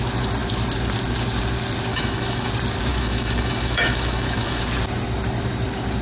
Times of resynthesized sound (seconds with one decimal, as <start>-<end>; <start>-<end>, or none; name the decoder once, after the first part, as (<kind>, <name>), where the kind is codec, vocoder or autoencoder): 1.9-2.5 (autoencoder, DAC-VAE); 2.9-4.6